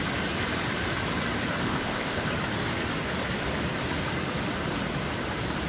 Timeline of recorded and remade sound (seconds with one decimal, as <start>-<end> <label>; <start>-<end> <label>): 0.0-1.6 recorded; 1.6-2.3 remade; 2.3-5.7 recorded

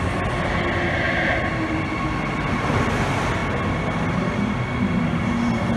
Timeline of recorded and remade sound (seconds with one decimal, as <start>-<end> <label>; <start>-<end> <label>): 0.0-5.8 recorded

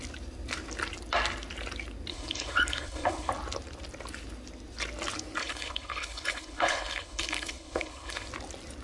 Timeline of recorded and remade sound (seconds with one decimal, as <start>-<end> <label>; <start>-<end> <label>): 0.0-2.1 recorded; 2.1-3.3 remade; 3.3-5.4 recorded; 5.4-8.3 remade; 8.3-8.8 recorded

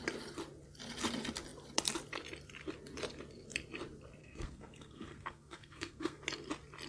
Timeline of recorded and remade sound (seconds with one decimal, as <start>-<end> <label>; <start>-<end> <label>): 0.0-4.2 recorded; 4.2-6.2 remade; 6.2-6.9 recorded

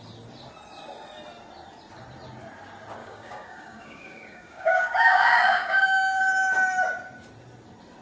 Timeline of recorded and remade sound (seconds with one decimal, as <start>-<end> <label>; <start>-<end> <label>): 0.0-3.0 recorded; 3.0-6.2 remade; 6.2-8.0 recorded

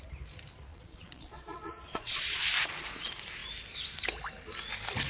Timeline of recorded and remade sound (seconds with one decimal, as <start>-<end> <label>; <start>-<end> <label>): 0.0-0.7 recorded; 0.7-2.4 remade; 2.4-5.1 recorded